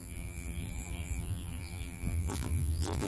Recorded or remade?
remade